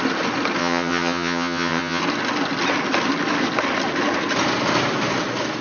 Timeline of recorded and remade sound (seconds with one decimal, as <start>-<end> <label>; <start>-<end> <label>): 0.0-0.6 recorded; 0.6-2.0 remade; 2.0-5.6 recorded